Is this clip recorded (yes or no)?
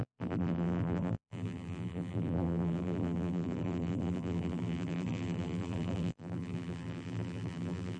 no